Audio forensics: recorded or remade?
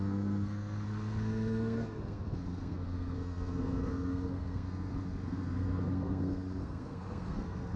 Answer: remade